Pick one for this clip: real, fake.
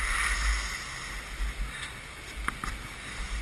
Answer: real